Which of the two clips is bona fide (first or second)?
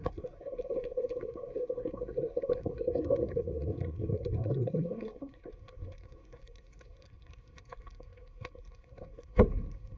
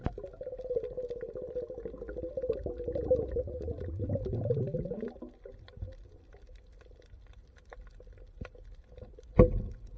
second